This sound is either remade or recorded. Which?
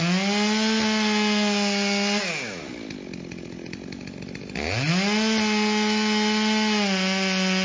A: recorded